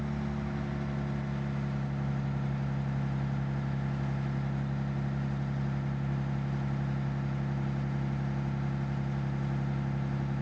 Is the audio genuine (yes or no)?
yes